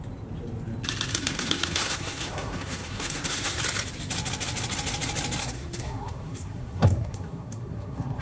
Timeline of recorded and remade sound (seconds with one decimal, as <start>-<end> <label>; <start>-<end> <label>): 0.0-1.1 recorded; 1.1-3.6 remade; 3.6-5.4 recorded; 5.4-8.2 remade